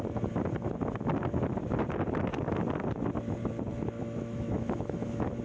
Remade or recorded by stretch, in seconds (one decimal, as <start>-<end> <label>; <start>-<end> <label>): 0.0-3.7 recorded; 3.7-5.4 remade